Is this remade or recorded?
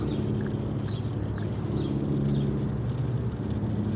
recorded